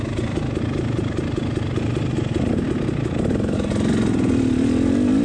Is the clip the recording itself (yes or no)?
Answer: yes